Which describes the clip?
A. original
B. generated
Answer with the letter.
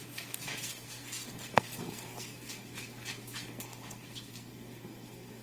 B